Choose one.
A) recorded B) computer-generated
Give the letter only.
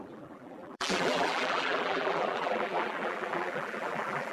B